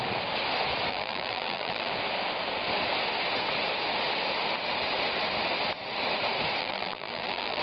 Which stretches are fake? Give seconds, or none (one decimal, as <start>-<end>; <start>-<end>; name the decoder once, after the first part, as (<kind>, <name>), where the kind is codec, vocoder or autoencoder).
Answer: 0.9-1.9 (vocoder, BigVGAN v2); 6.6-7.6